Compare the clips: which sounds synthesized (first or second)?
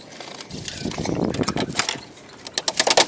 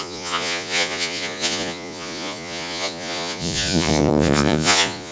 second